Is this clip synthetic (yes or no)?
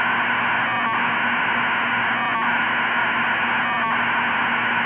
no